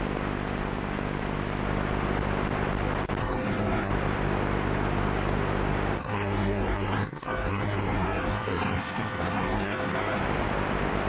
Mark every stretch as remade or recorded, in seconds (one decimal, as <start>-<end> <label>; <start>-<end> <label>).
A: 0.0-3.2 recorded; 3.2-3.9 remade; 3.9-6.0 recorded; 6.0-10.2 remade; 10.2-11.1 recorded